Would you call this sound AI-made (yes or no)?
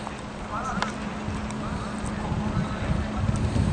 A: no